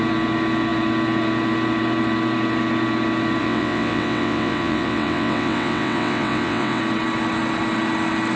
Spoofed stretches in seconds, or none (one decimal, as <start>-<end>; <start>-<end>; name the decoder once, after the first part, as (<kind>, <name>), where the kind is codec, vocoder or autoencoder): 3.4-6.8 (vocoder, WaveNeXt)